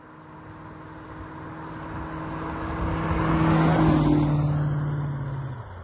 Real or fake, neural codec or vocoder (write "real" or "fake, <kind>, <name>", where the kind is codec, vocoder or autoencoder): real